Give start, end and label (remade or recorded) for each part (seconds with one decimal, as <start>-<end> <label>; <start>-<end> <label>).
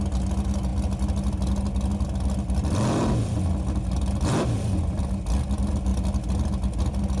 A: 0.0-7.2 recorded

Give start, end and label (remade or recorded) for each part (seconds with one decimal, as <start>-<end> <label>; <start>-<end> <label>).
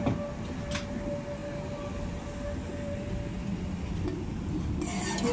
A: 0.0-5.3 recorded